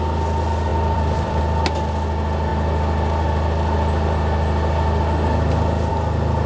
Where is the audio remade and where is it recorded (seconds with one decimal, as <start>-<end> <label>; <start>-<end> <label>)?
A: 0.0-0.7 recorded; 0.7-1.4 remade; 1.4-6.5 recorded